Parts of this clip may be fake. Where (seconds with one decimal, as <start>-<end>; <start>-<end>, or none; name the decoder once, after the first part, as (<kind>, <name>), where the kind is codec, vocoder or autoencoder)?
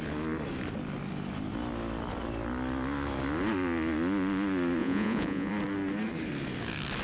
4.8-5.5 (vocoder, Vocos)